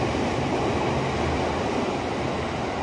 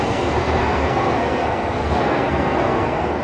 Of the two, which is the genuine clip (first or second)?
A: first